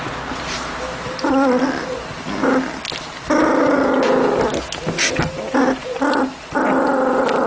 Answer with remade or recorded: recorded